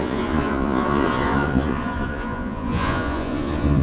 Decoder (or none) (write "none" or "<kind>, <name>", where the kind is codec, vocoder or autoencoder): vocoder, Vocos